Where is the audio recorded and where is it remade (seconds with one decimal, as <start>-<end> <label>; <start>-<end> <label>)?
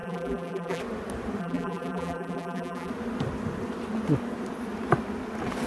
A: 0.0-0.8 remade; 0.8-1.4 recorded; 1.4-2.9 remade; 2.9-5.7 recorded